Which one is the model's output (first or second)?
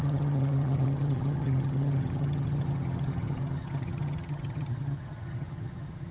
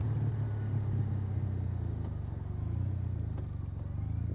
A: first